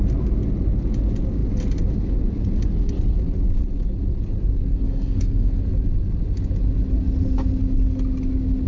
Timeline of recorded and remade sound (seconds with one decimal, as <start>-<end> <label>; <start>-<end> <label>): 0.0-4.7 recorded; 4.7-5.6 remade; 5.6-8.7 recorded